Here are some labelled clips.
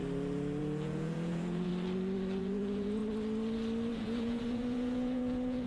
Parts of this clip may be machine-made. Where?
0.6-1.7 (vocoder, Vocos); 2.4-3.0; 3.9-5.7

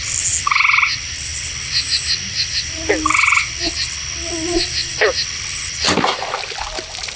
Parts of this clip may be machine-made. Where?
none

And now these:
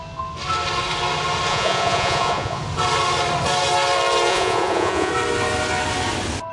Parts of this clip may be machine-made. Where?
1.5-2.6 (vocoder, Vocos); 4.3-5.1

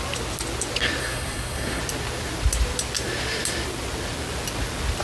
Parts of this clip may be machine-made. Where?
1.0-1.8 (codec, SNAC)

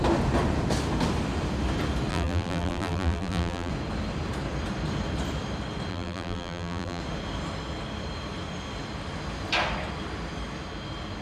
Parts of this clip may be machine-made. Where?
2.1-3.7 (vocoder, BigVGAN v2); 5.9-7.0